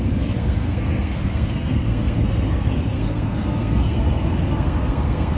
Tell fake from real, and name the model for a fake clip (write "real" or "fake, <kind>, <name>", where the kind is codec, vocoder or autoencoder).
fake, codec, SNAC